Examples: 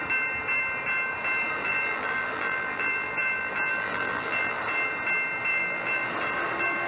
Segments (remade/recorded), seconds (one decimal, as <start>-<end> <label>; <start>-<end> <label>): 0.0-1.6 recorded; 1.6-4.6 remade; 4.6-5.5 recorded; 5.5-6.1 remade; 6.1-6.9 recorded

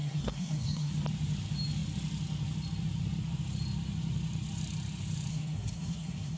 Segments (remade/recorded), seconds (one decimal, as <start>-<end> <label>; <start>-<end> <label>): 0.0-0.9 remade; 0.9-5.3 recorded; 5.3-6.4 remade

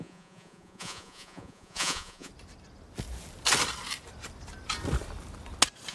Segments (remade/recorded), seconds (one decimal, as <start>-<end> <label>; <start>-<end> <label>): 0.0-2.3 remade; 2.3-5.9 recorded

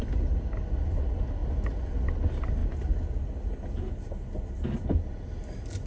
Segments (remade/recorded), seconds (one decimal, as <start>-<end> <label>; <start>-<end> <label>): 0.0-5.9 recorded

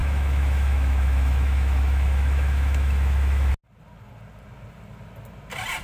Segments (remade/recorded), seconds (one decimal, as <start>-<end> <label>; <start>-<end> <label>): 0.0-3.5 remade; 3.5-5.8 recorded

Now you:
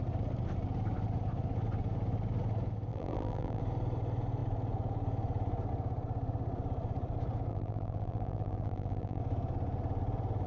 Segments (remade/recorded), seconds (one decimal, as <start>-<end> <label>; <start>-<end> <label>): 0.0-2.9 recorded; 2.9-3.6 remade; 3.6-7.5 recorded; 7.5-9.2 remade; 9.2-10.5 recorded